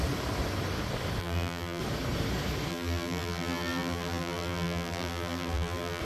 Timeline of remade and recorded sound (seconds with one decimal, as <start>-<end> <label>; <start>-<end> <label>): 0.0-1.2 recorded; 1.2-1.8 remade; 1.8-2.7 recorded; 2.7-6.0 remade